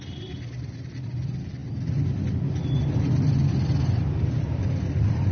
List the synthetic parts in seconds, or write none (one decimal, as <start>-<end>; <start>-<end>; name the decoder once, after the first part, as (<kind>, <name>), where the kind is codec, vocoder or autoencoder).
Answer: 0.0-5.3 (vocoder, BigVGAN v2)